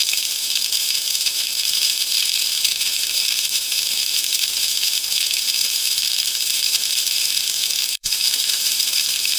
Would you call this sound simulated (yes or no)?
yes